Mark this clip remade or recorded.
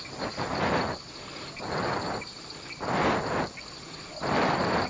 recorded